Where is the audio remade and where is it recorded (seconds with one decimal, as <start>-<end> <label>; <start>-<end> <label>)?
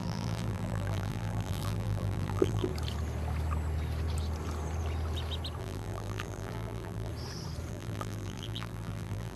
0.0-2.7 remade; 2.7-5.6 recorded; 5.6-7.1 remade; 7.1-7.7 recorded; 7.7-9.4 remade